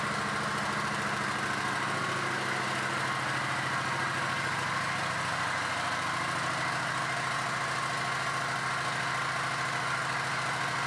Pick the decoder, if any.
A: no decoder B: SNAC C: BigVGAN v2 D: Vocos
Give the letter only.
A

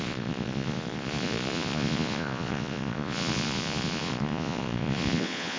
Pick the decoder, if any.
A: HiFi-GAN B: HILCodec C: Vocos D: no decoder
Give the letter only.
C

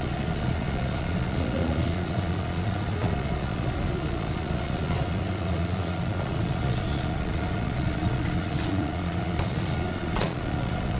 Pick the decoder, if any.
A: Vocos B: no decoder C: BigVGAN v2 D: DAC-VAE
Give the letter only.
A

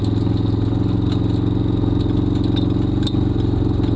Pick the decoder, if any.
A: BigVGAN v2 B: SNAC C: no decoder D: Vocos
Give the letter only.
C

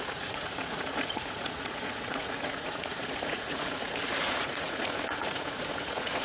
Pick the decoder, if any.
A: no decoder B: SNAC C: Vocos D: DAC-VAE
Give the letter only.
C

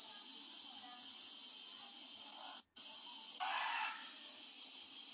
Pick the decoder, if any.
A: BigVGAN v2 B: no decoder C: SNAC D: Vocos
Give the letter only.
B